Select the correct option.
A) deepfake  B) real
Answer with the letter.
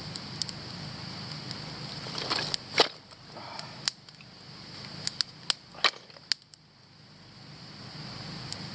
B